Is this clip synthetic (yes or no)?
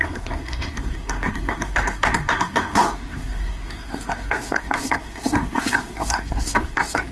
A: yes